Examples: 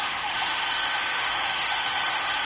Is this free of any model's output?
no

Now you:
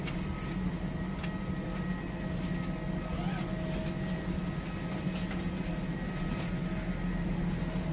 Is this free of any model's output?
yes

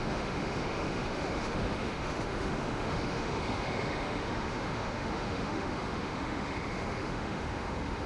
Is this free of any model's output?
no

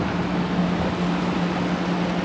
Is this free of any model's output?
yes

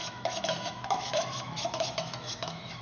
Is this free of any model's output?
no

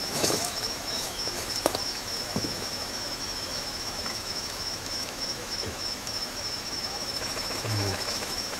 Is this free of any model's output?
no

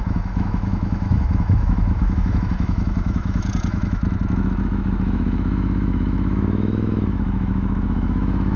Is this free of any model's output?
no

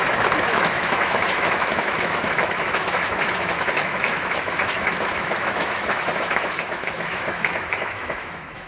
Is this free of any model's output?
no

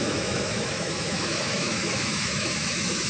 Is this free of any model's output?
no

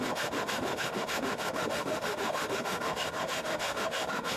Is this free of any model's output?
no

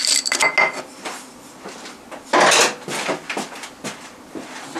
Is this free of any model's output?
yes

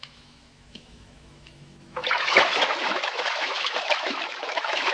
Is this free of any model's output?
no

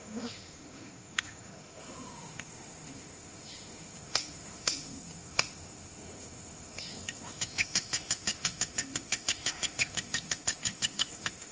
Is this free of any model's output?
no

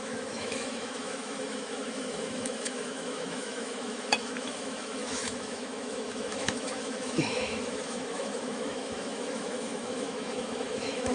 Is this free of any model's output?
no